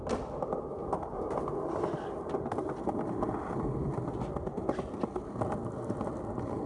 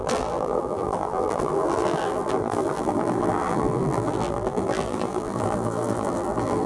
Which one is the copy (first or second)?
second